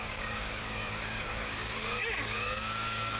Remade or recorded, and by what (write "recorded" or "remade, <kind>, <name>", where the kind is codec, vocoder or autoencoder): remade, codec, DAC